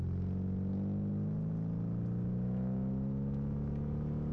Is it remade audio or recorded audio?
recorded